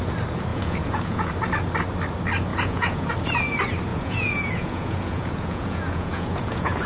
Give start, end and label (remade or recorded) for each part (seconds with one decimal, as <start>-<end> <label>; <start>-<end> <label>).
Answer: 0.0-0.5 recorded; 0.5-1.3 remade; 1.3-2.5 recorded; 2.5-3.1 remade; 3.1-3.9 recorded; 3.9-6.9 remade